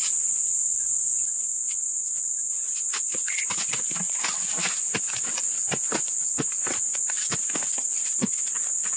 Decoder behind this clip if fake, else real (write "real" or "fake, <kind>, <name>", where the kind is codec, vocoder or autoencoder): real